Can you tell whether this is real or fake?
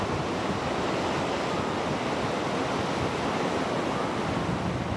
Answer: real